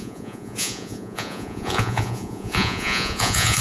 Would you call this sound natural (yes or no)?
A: no